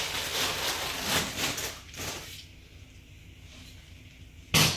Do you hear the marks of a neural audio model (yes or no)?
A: no